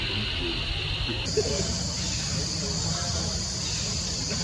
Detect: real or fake real